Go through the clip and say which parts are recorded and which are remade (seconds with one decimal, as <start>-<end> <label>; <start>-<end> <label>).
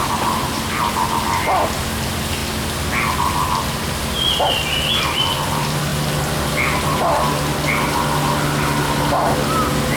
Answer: 0.0-10.0 recorded